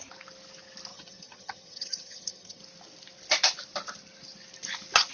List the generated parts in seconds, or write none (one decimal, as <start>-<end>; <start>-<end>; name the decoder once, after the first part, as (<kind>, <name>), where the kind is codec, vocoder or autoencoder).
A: 0.9-2.6 (vocoder, HiFi-GAN)